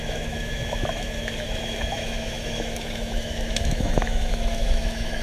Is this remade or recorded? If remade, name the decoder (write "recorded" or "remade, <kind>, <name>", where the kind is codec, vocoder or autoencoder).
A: remade, autoencoder, DAC-VAE